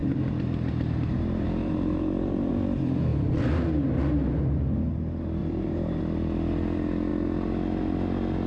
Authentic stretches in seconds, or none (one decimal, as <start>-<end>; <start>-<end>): 2.5-5.4; 6.0-8.5